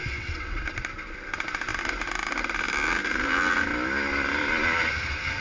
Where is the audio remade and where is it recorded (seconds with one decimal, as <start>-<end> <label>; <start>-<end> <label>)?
0.0-0.6 remade; 0.6-5.4 recorded